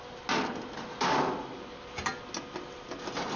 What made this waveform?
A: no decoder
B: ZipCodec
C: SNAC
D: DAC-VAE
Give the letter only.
A